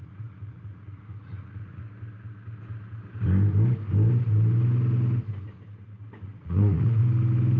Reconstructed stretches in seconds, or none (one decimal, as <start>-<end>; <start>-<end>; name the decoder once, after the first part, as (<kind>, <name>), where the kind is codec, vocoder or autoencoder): 0.0-1.8 (vocoder, Vocos); 6.2-7.0